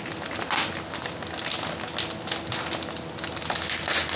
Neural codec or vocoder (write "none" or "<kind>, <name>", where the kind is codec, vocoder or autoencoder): none